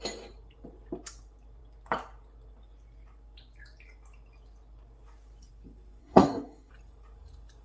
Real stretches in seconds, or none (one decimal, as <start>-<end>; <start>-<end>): 0.0-6.0; 6.7-7.6